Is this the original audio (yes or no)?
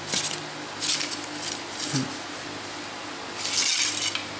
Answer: yes